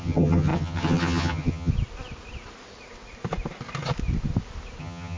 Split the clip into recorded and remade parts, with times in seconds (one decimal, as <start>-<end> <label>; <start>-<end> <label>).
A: 0.0-1.7 remade; 1.7-4.8 recorded; 4.8-5.2 remade